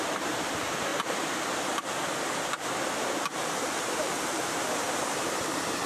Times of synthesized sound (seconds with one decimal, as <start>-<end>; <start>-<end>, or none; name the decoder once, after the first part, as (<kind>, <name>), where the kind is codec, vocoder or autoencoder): 0.0-0.9 (vocoder, BigVGAN v2); 3.9-5.9